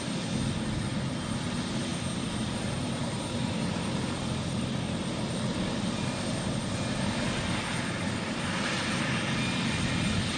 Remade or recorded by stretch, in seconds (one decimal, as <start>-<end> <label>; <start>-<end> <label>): 0.0-10.4 recorded